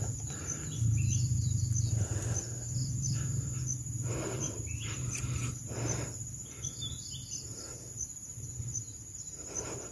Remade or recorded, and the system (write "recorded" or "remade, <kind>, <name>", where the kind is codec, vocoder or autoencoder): recorded